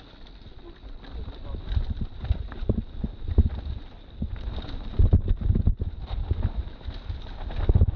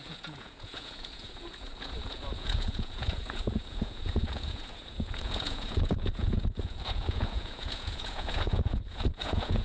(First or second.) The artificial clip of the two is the second